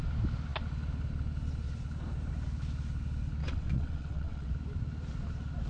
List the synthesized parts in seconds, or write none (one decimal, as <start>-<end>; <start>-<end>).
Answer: 3.4-4.5